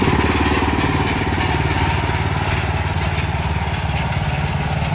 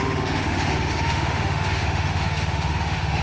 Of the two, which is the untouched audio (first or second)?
first